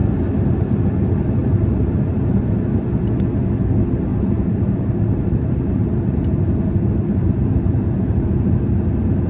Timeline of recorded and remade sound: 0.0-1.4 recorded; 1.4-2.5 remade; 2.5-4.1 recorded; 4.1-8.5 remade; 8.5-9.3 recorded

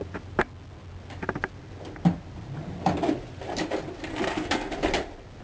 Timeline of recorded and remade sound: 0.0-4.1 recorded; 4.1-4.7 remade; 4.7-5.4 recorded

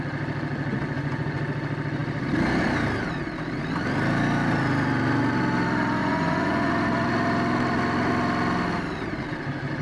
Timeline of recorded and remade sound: 0.0-0.7 recorded; 0.7-1.4 remade; 1.4-6.0 recorded; 6.0-6.7 remade; 6.7-9.8 recorded

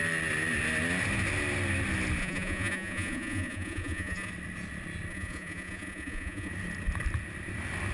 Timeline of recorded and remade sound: 0.0-2.2 recorded; 2.2-4.3 remade; 4.3-5.1 recorded; 5.1-6.5 remade; 6.5-7.9 recorded

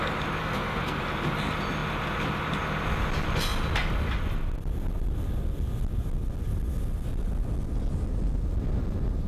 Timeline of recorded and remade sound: 0.0-0.4 recorded; 0.4-1.0 remade; 1.0-9.3 recorded

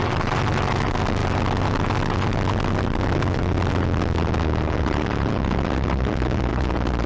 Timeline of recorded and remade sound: 0.0-7.1 recorded

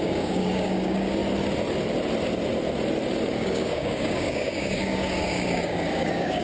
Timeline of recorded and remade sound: 0.0-1.2 remade; 1.2-3.3 recorded; 3.3-6.4 remade